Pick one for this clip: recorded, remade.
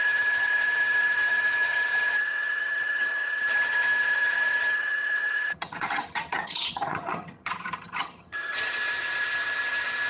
remade